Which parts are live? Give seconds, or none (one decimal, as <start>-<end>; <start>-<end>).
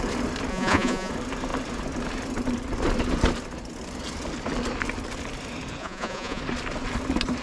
0.0-0.5; 1.1-5.8; 6.4-7.4